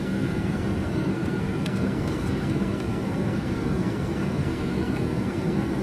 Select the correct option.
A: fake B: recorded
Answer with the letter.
A